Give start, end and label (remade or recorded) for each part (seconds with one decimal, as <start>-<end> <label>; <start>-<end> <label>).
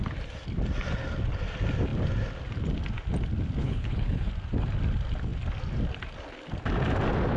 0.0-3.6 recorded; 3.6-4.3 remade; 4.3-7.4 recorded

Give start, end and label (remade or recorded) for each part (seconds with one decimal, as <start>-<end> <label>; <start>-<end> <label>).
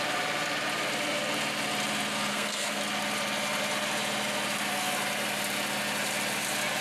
0.0-2.3 recorded; 2.3-2.8 remade; 2.8-6.8 recorded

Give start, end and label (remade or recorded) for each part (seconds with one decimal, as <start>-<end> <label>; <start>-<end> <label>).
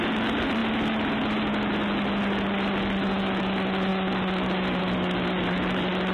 0.0-6.1 recorded